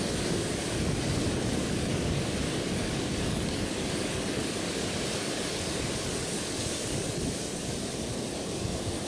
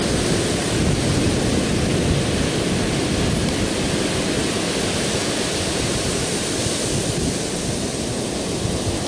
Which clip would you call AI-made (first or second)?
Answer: first